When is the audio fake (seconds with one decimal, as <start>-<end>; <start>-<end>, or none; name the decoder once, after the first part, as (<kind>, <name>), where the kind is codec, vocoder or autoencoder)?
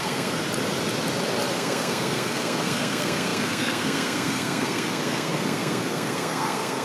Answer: 0.0-0.4 (codec, SNAC); 1.5-6.8